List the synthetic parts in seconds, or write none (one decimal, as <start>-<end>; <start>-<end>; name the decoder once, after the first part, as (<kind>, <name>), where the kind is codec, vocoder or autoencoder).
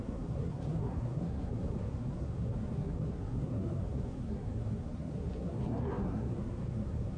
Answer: 0.0-7.2 (codec, SNAC)